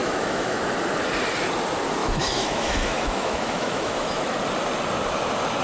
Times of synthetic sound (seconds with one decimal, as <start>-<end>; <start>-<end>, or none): 0.0-0.6; 2.0-4.4